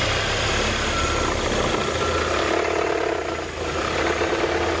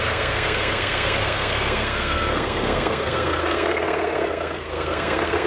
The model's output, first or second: second